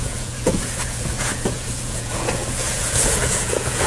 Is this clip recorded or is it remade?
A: remade